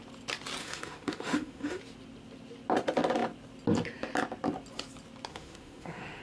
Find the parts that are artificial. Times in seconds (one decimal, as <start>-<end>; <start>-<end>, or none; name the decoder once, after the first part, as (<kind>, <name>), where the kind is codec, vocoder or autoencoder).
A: 0.6-1.8 (autoencoder, DAC-VAE); 5.3-6.2